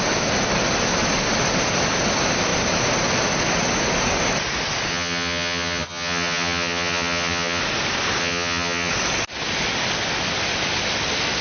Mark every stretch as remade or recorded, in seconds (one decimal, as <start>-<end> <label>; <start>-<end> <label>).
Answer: 0.0-4.9 recorded; 4.9-7.6 remade; 7.6-8.2 recorded; 8.2-8.9 remade; 8.9-11.4 recorded

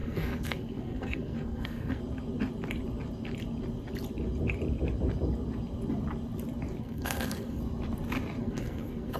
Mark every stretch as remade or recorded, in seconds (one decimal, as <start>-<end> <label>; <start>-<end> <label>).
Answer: 0.0-2.0 remade; 2.0-6.8 recorded; 6.8-7.6 remade; 7.6-8.4 recorded; 8.4-9.2 remade

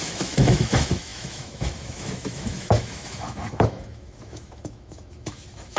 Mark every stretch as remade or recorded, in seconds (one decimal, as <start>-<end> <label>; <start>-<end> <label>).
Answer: 0.0-5.8 remade